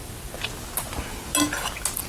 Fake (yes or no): no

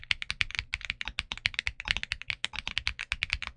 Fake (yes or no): no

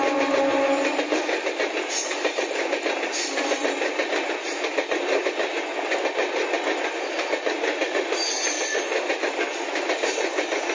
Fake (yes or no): no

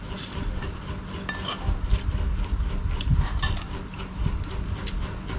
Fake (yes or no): no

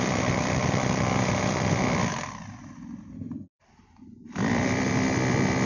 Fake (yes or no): yes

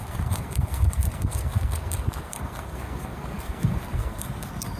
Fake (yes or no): yes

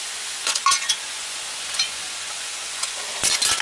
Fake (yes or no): yes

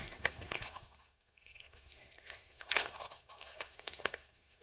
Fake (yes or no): yes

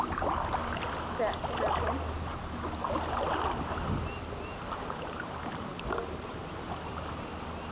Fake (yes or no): no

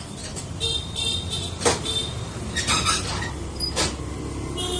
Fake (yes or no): no